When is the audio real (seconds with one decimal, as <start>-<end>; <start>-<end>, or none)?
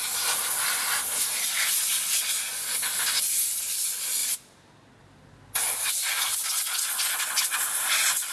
0.0-8.3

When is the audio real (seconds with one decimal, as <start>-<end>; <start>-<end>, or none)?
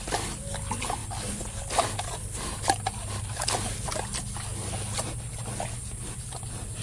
0.0-6.8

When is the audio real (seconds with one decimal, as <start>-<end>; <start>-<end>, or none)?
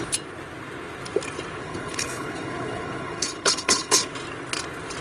0.0-1.6; 4.1-5.0